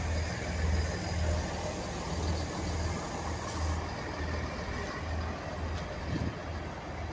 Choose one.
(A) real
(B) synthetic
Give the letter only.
A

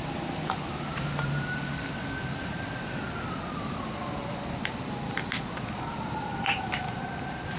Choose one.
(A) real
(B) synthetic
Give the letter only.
B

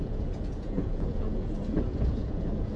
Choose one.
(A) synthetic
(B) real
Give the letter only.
A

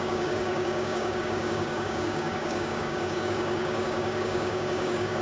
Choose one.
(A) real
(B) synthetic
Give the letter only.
B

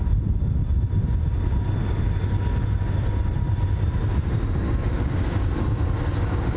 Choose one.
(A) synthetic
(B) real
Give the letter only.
B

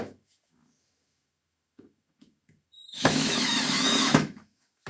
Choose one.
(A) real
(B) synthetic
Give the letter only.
B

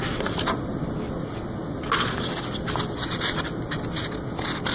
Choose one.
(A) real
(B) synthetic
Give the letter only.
A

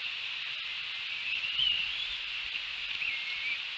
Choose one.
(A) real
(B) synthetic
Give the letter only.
A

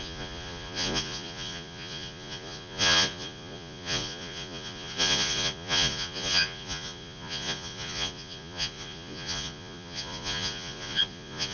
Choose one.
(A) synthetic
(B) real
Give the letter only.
A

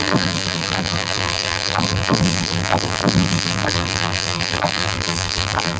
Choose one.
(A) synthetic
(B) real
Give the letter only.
A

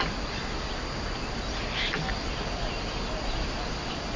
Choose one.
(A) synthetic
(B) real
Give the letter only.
B